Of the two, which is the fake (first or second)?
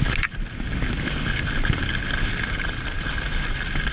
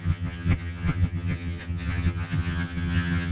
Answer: second